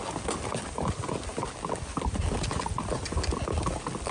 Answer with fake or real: real